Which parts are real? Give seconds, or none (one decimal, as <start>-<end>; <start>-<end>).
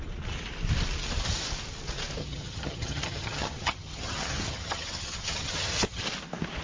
0.0-2.2; 6.0-6.6